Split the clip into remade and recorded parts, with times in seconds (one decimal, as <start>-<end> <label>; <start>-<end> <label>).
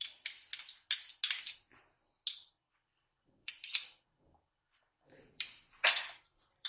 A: 0.0-0.5 remade; 0.5-2.7 recorded; 2.7-6.7 remade